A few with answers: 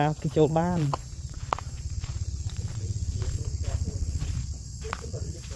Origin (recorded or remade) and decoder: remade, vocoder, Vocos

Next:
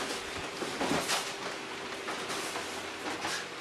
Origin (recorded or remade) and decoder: recorded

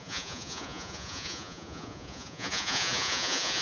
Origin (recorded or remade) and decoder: remade, vocoder, Vocos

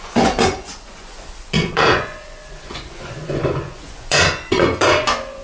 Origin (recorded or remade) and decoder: remade, vocoder, Vocos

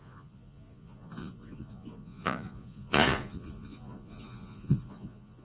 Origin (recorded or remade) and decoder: remade, vocoder, Vocos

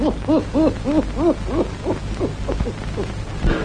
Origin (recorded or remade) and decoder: recorded